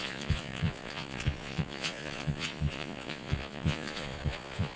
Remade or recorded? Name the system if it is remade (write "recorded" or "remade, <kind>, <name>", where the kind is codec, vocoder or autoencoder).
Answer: remade, vocoder, Vocos